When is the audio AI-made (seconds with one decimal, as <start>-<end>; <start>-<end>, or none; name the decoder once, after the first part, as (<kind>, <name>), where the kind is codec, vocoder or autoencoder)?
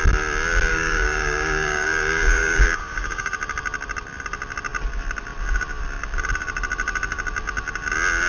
0.7-3.3 (codec, DAC)